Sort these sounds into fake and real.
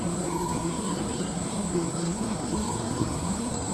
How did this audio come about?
fake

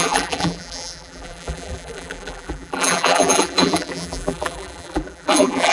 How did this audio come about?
fake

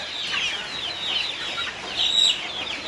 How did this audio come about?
real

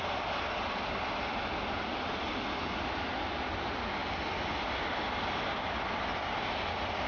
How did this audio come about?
real